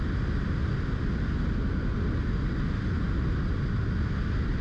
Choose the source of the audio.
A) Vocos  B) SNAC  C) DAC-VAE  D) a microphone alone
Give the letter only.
D